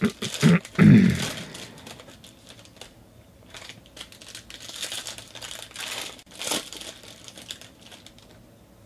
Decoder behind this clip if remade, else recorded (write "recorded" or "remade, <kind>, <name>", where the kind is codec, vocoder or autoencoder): recorded